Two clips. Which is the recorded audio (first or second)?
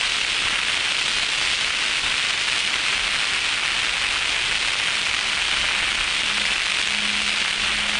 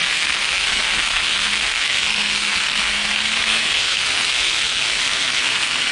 first